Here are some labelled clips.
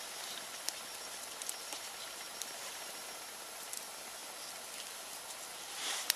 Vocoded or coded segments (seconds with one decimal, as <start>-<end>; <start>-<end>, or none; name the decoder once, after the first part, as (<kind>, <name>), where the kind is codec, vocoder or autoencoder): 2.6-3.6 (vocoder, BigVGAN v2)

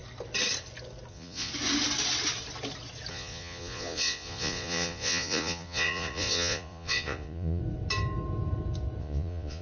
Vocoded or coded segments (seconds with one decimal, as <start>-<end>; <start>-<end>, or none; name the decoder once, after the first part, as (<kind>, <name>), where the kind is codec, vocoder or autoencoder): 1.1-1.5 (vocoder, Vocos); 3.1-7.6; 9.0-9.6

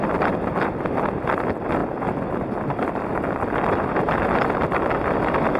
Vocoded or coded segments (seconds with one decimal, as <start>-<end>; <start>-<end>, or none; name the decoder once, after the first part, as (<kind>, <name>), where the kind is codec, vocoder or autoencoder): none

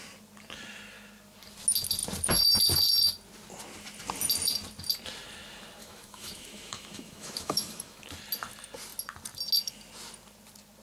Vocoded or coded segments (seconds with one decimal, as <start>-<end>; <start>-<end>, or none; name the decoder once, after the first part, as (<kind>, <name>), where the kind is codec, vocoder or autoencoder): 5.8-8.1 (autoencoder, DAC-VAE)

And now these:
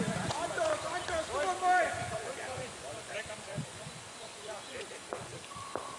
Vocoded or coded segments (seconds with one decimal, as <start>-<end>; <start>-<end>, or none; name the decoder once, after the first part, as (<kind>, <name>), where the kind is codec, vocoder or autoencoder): 0.0-0.7 (vocoder, Vocos); 1.8-5.3

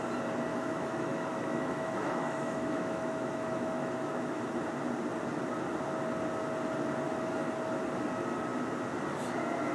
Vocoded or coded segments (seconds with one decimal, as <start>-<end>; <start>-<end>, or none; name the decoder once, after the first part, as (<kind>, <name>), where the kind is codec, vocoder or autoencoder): 0.5-4.4 (autoencoder, DAC-VAE)

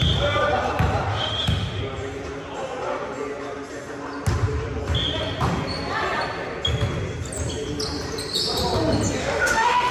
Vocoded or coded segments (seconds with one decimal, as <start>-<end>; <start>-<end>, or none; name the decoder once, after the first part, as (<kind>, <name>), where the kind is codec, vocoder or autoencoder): 1.1-1.8 (autoencoder, DAC-VAE); 9.2-9.9

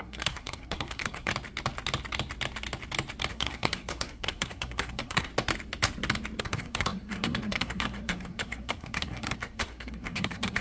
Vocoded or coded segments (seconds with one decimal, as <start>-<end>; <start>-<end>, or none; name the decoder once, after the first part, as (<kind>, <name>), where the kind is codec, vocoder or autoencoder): 0.0-1.3 (codec, SNAC); 3.3-5.3; 6.4-10.6